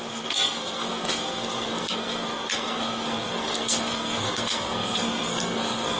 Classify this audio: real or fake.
fake